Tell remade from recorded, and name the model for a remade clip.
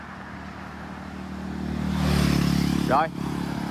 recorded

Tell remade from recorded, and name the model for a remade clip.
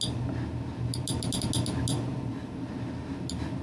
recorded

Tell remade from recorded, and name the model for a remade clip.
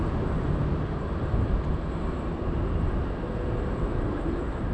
recorded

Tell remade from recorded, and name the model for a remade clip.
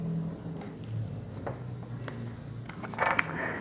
recorded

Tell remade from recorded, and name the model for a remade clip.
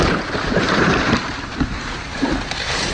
remade, vocoder, BigVGAN v2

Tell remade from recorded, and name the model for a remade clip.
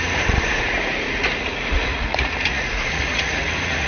remade, vocoder, Vocos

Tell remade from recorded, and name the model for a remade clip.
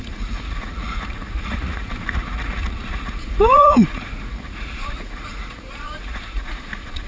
remade, vocoder, Vocos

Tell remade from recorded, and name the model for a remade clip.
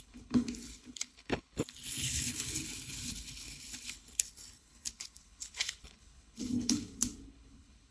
remade, codec, HILCodec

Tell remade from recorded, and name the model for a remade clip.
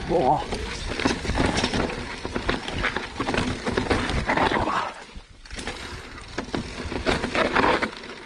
recorded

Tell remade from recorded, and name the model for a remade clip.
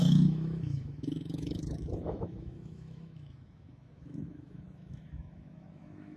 remade, autoencoder, DAC-VAE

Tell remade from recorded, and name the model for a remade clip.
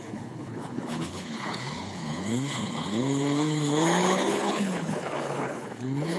remade, codec, HILCodec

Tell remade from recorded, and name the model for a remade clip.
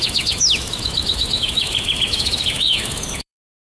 remade, autoencoder, DAC-VAE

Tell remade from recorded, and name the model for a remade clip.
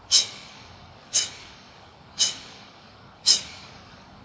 remade, codec, DAC